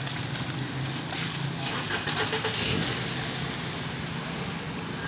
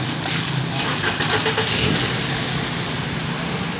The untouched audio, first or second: first